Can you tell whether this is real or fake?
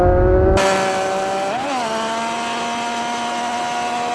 real